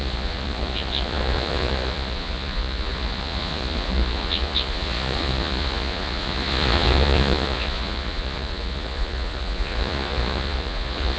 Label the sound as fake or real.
fake